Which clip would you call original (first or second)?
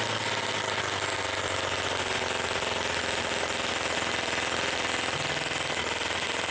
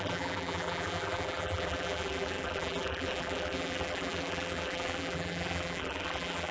first